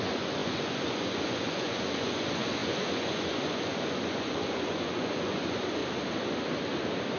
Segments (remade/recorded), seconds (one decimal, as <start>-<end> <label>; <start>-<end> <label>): 0.0-5.8 remade; 5.8-7.2 recorded